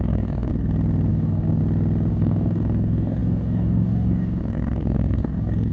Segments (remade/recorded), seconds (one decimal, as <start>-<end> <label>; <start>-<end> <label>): 0.0-0.5 remade; 0.5-1.1 recorded; 1.1-1.6 remade; 1.6-2.1 recorded; 2.1-5.7 remade